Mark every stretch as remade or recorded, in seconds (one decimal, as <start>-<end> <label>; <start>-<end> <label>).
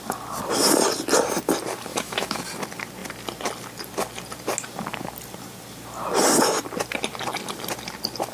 0.0-1.9 recorded; 1.9-2.4 remade; 2.4-8.3 recorded